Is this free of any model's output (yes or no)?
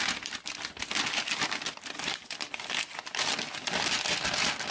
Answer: yes